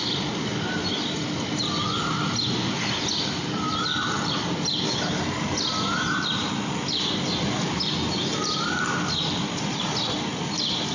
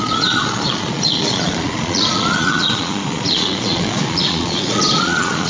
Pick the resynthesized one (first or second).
second